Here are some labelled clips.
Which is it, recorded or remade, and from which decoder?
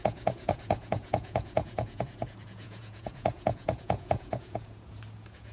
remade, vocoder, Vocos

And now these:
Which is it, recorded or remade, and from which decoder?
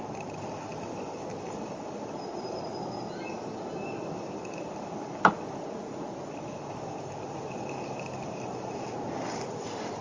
recorded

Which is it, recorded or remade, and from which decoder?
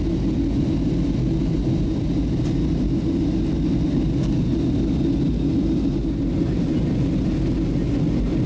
recorded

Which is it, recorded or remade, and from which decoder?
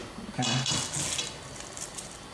recorded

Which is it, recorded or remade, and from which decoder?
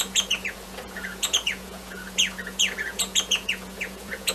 remade, vocoder, Vocos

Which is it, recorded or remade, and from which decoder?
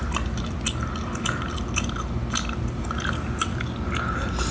recorded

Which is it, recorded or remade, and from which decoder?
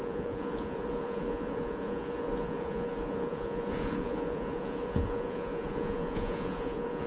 remade, vocoder, Vocos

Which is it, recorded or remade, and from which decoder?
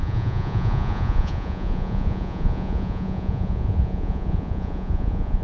remade, vocoder, Vocos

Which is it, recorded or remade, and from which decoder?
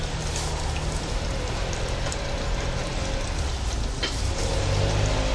recorded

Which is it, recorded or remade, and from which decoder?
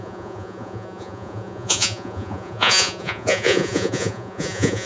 remade, vocoder, Vocos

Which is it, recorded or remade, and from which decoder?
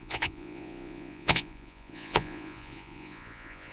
remade, vocoder, Vocos